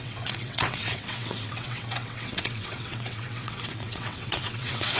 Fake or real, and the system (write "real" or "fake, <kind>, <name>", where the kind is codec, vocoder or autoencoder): fake, vocoder, WaveNeXt